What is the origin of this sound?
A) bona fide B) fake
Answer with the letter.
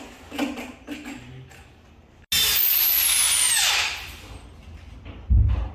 A